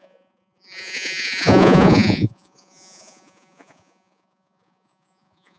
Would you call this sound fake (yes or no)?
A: yes